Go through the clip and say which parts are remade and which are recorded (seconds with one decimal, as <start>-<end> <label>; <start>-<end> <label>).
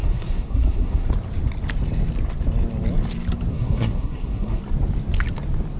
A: 0.0-1.1 remade; 1.1-3.5 recorded; 3.5-4.6 remade; 4.6-5.8 recorded